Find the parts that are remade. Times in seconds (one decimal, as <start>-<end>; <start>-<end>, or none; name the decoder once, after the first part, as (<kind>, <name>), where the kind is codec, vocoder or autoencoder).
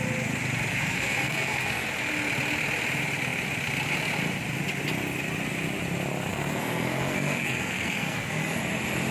0.7-1.9 (codec, SNAC); 6.3-8.6